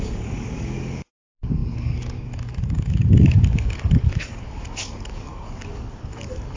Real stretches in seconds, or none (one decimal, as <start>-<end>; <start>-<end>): none